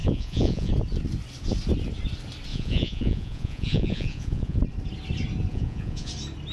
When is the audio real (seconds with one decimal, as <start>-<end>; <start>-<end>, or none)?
0.7-2.5; 4.6-5.5; 6.1-6.5